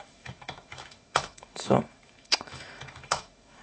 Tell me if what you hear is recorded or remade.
remade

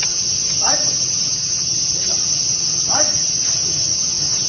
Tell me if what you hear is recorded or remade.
remade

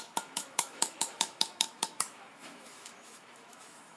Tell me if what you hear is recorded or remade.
remade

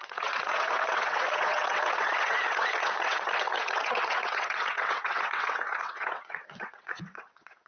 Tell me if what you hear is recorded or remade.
remade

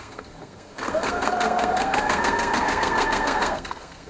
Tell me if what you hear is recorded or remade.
remade